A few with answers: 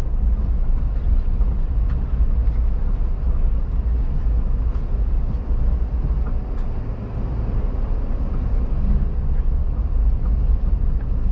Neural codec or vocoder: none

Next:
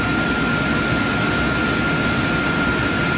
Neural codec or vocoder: none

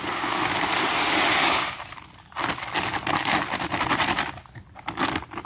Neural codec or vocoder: none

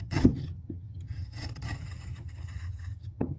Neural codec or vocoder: vocoder, HiFi-GAN